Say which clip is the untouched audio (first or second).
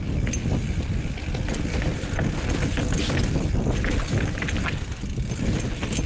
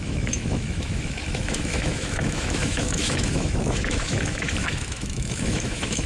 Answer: first